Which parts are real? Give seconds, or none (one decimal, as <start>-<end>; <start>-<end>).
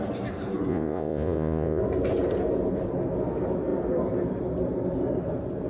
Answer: 0.0-0.7; 1.8-5.7